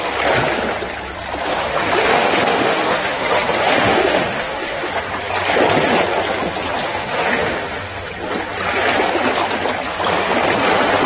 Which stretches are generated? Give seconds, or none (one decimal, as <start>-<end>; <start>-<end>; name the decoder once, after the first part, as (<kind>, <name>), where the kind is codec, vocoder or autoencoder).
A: 1.5-4.9 (autoencoder, DAC-VAE); 6.8-8.1